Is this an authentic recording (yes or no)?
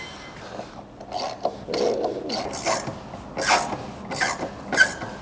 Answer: yes